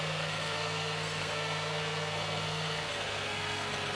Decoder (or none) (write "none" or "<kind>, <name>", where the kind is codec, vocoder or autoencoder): codec, SNAC